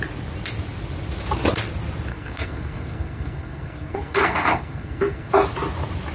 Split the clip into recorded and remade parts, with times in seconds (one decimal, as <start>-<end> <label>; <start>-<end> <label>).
0.0-2.1 recorded; 2.1-5.3 remade; 5.3-6.1 recorded